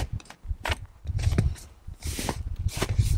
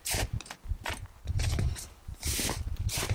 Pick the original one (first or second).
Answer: second